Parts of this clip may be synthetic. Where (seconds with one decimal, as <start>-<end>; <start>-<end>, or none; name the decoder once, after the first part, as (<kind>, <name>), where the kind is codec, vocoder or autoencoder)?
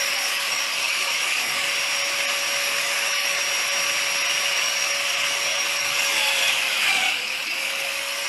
0.0-1.7 (codec, DAC); 2.6-3.4; 4.5-8.3